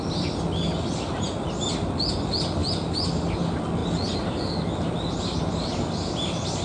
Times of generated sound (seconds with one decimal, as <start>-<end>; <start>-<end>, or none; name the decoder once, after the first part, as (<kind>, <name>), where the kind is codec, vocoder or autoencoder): none